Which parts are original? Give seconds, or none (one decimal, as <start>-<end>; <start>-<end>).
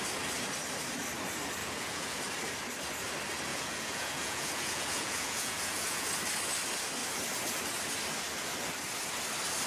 0.0-1.6; 2.2-3.5; 6.1-9.7